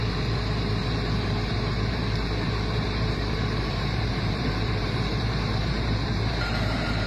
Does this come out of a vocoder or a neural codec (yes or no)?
yes